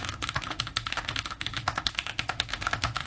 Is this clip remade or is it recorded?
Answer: remade